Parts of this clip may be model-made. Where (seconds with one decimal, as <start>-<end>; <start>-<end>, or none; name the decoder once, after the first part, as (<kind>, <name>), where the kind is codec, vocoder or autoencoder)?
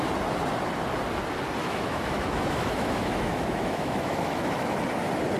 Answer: 1.6-4.8 (autoencoder, DAC-VAE)